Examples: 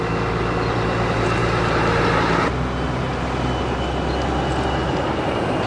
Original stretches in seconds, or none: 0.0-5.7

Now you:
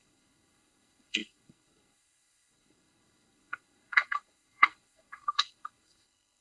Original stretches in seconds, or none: none

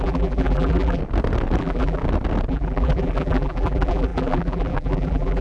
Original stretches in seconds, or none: 1.0-1.6; 2.0-2.5